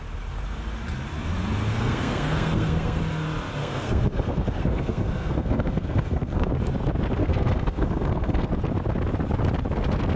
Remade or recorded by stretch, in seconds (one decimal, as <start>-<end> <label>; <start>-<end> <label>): 0.0-1.7 recorded; 1.7-3.0 remade; 3.0-3.6 recorded; 3.6-6.5 remade; 6.5-7.2 recorded; 7.2-8.5 remade; 8.5-10.2 recorded